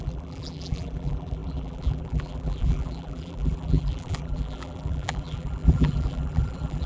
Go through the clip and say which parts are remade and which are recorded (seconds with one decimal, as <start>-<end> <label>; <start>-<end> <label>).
0.0-6.9 remade